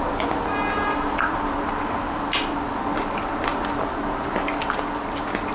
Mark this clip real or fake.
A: real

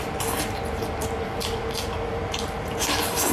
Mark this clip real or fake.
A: real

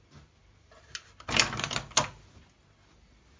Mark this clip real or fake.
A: real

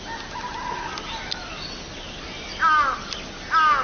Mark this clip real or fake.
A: real